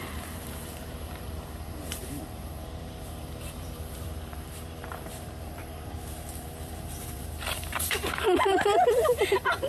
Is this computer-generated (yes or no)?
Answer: yes